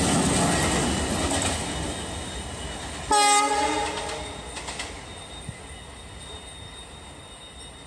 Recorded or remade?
recorded